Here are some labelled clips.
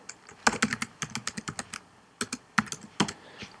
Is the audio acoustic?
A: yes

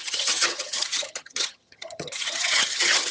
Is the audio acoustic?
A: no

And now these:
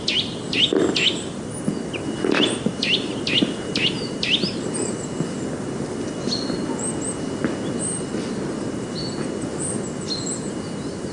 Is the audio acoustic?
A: yes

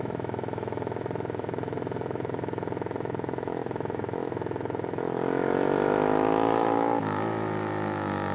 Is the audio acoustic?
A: no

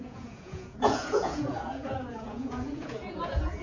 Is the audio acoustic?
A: no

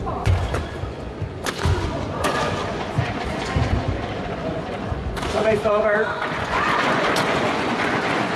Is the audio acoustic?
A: no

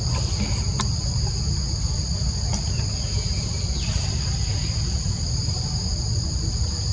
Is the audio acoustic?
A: yes